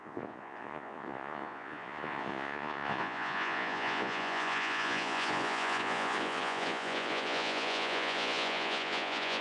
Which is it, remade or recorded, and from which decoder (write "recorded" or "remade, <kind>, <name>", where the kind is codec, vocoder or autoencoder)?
remade, vocoder, Vocos